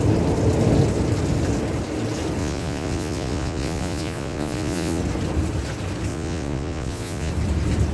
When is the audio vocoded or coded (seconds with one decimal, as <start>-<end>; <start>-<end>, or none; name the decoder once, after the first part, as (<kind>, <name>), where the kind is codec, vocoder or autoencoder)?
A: 2.4-5.0 (vocoder, Vocos); 6.1-7.3